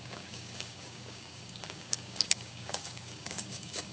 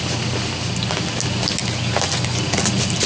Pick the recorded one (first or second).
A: second